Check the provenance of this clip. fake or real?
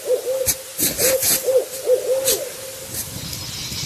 real